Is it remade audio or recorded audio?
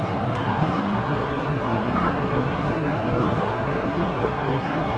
remade